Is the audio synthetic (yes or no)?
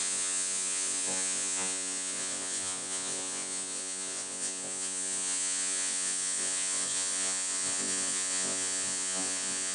yes